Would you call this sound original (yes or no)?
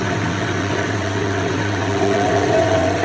no